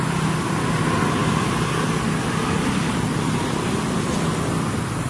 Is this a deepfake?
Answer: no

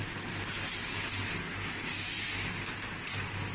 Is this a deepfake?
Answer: no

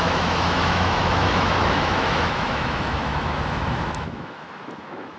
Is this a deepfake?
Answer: yes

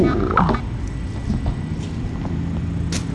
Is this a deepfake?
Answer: no